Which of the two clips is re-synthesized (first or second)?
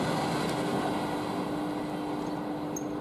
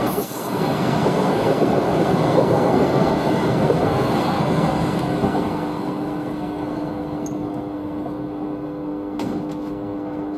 second